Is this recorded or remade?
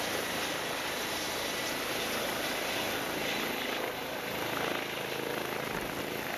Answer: recorded